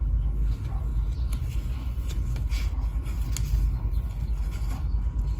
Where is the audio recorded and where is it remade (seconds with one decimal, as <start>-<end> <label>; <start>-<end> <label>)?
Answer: 0.0-5.4 recorded

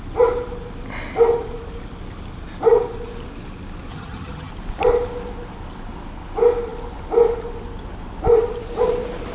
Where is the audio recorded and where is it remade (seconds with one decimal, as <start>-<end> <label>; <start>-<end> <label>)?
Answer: 0.0-3.9 recorded; 3.9-4.5 remade; 4.5-9.3 recorded

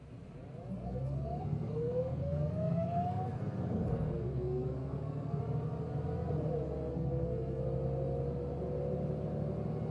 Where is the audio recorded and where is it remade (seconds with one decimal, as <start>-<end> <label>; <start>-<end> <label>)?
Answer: 0.0-0.7 recorded; 0.7-5.4 remade; 5.4-6.9 recorded; 6.9-7.6 remade; 7.6-9.9 recorded

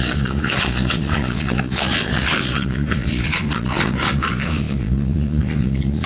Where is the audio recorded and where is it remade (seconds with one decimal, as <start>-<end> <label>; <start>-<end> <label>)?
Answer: 0.0-6.1 remade

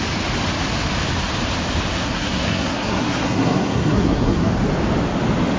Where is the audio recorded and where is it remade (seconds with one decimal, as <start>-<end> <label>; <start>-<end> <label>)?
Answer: 0.0-1.9 recorded; 1.9-4.5 remade; 4.5-5.6 recorded

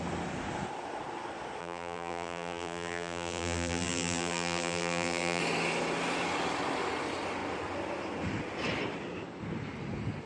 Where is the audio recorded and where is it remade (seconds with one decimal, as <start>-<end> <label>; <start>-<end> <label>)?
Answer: 0.0-1.6 recorded; 1.6-5.4 remade; 5.4-10.3 recorded